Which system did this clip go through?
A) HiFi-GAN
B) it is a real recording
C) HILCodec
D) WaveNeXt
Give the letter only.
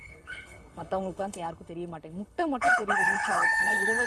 C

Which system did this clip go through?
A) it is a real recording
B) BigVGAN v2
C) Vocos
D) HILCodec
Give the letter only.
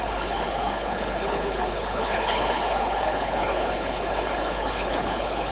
D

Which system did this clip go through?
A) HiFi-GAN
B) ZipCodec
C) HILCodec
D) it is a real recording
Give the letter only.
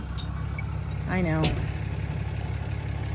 D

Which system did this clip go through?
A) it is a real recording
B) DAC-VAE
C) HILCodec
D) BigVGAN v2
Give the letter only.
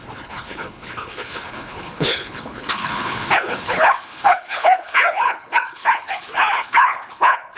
C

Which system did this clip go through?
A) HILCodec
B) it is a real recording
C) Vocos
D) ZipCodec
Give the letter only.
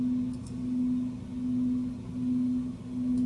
B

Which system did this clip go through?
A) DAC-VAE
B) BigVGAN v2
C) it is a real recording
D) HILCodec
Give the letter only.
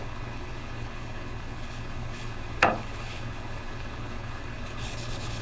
D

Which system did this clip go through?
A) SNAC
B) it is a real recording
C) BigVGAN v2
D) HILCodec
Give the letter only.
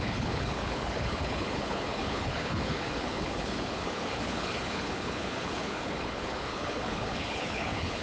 D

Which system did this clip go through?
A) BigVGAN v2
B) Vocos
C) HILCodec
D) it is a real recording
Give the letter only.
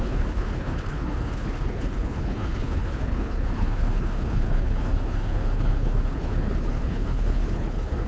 C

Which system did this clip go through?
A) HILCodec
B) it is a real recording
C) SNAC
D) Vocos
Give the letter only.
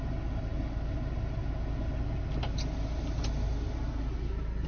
B